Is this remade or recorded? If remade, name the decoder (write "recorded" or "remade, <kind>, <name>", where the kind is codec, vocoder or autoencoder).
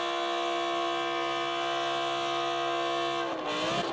recorded